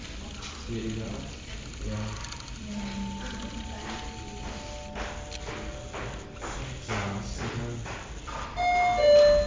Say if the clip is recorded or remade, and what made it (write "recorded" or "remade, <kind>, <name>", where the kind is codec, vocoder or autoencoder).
recorded